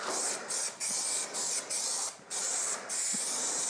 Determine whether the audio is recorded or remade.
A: recorded